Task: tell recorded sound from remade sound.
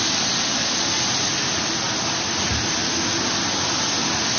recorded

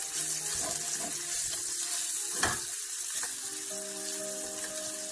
recorded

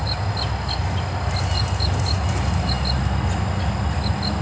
recorded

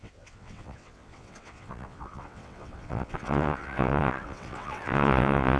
remade